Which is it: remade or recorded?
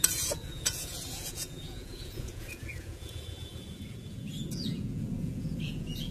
remade